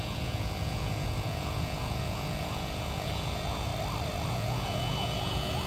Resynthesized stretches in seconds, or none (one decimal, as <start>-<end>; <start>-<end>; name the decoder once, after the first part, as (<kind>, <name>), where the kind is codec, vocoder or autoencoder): 0.0-3.7 (vocoder, Vocos); 4.3-5.7